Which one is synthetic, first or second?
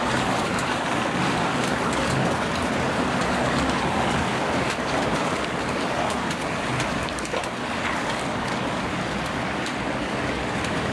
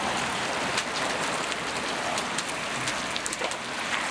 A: first